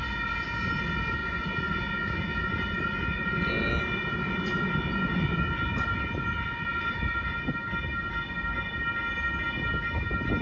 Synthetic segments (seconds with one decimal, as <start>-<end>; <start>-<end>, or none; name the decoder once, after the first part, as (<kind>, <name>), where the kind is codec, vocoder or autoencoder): none